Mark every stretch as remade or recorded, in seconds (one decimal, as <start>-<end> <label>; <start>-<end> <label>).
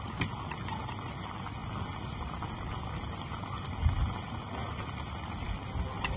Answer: 0.0-6.2 recorded